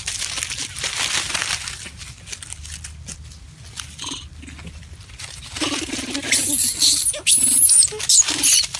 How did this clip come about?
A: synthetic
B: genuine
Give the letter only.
B